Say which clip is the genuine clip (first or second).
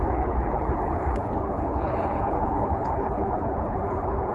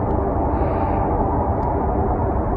second